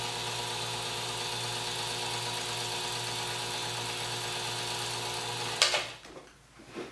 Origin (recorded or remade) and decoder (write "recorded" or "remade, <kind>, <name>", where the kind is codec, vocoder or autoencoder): recorded